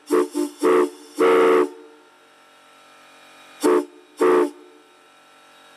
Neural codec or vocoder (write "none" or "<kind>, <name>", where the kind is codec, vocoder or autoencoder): none